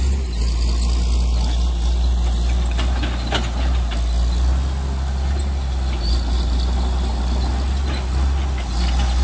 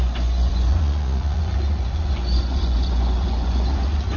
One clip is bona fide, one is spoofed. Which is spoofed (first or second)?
second